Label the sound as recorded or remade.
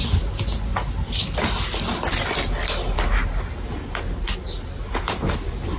recorded